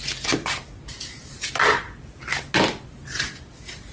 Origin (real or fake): real